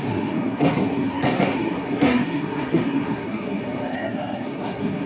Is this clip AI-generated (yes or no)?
yes